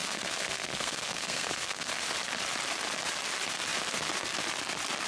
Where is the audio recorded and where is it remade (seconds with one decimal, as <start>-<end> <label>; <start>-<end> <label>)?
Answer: 0.0-1.9 remade; 1.9-5.1 recorded